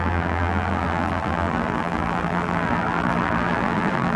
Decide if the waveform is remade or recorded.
remade